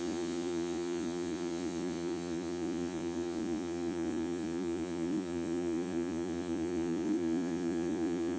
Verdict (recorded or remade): remade